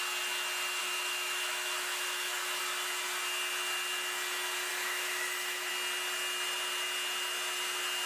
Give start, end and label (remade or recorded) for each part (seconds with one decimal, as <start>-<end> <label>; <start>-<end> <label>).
0.0-0.8 recorded; 0.8-2.6 remade; 2.6-4.7 recorded; 4.7-5.7 remade; 5.7-8.1 recorded